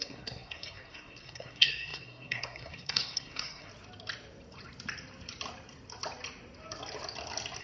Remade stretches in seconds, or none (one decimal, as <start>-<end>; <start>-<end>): 0.0-3.7